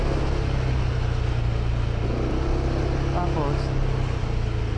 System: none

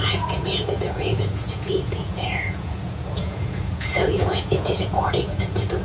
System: vocoder, Vocos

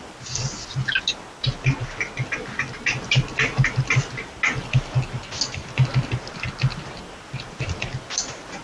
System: none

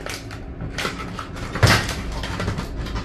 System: none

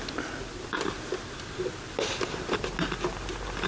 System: none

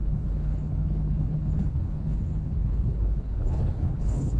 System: codec, HILCodec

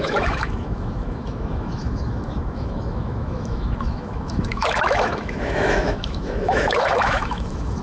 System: autoencoder, DAC-VAE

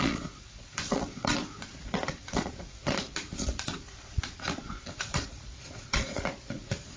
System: vocoder, Vocos